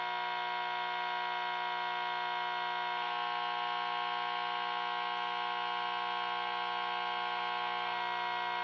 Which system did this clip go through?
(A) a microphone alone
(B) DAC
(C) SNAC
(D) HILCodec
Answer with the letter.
A